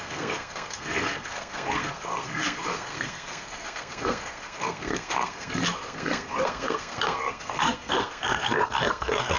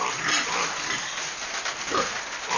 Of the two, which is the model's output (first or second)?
first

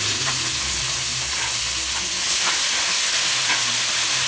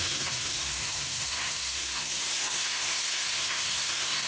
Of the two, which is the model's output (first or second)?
second